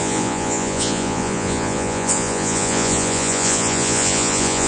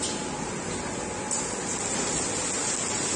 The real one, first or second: second